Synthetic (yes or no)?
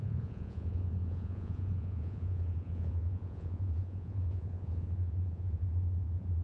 yes